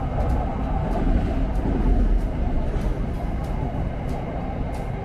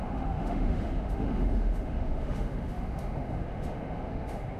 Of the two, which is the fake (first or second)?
second